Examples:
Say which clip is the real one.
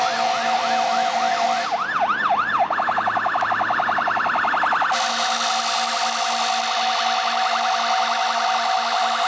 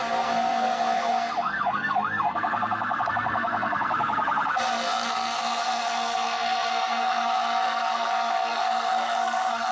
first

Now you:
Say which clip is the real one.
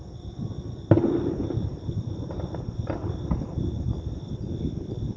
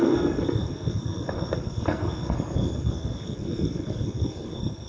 first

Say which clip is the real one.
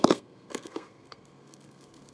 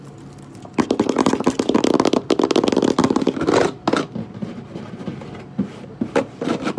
second